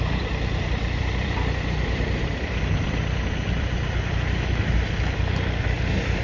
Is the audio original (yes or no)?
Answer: no